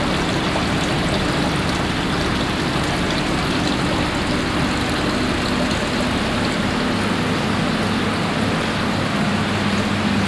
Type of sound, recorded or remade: recorded